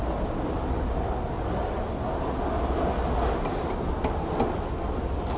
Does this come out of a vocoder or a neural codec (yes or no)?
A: yes